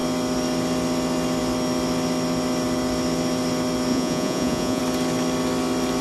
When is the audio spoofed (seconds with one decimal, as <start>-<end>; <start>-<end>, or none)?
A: 3.9-4.8